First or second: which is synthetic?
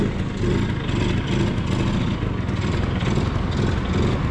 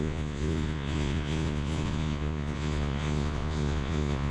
second